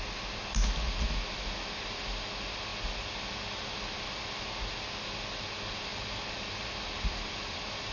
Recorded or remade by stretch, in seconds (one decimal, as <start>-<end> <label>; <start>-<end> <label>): 0.0-7.9 recorded